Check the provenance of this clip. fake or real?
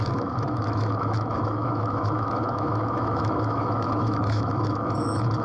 fake